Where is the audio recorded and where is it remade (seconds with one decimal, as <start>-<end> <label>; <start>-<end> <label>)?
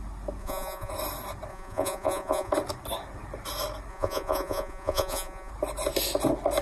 0.0-0.4 recorded; 0.4-0.9 remade; 0.9-1.5 recorded; 1.5-2.5 remade; 2.5-3.9 recorded; 3.9-5.5 remade; 5.5-6.6 recorded